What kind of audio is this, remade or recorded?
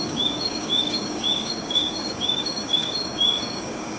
remade